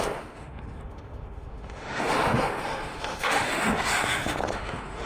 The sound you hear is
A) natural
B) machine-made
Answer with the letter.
B